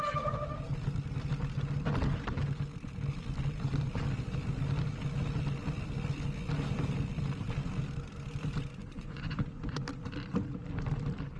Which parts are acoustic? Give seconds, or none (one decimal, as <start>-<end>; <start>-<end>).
0.0-8.8; 9.8-11.4

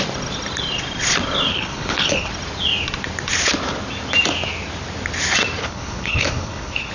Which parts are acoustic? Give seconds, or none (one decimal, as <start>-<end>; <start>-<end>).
0.0-1.5; 2.3-5.6

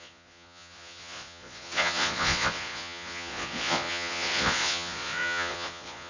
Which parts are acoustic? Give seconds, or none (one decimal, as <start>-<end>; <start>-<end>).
none

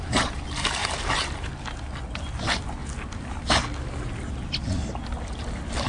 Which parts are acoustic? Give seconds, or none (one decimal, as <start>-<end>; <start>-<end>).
0.0-5.9

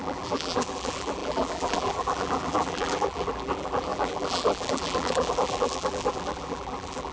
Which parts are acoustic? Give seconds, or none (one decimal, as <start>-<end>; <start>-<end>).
none